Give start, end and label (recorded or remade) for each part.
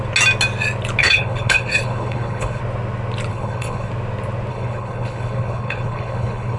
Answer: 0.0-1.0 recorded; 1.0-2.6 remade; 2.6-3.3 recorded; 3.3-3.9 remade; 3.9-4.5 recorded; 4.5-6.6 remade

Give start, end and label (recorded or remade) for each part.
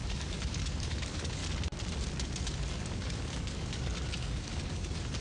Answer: 0.0-1.4 remade; 1.4-2.7 recorded; 2.7-5.2 remade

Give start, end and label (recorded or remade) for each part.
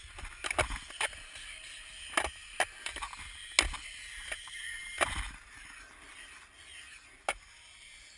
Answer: 0.0-8.2 recorded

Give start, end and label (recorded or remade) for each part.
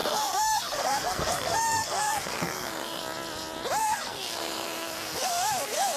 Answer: 0.0-3.0 remade; 3.0-3.8 recorded; 3.8-6.0 remade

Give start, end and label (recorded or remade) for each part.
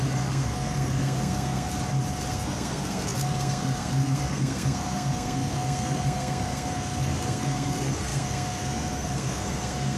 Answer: 0.0-1.7 remade; 1.7-2.3 recorded; 2.3-10.0 remade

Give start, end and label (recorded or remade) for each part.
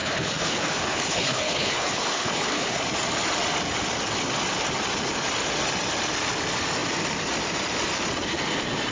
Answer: 0.0-2.8 remade; 2.8-8.9 recorded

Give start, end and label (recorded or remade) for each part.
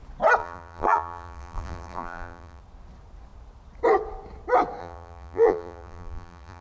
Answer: 0.0-0.4 recorded; 0.4-2.6 remade; 2.6-4.8 recorded; 4.8-6.6 remade